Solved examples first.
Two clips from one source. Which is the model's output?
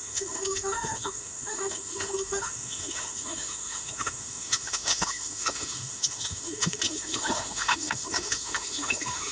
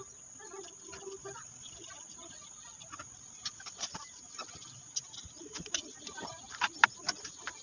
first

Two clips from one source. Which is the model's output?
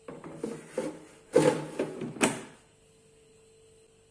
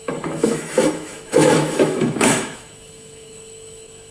second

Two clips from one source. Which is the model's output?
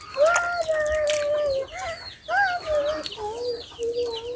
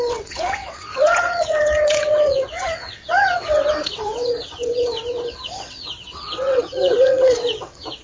second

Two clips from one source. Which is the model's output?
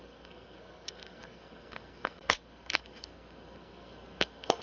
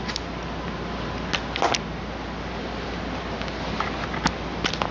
first